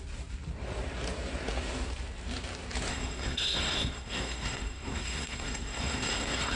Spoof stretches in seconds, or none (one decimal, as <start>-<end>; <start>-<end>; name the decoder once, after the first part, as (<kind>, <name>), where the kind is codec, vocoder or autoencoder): 2.9-6.6 (codec, SNAC)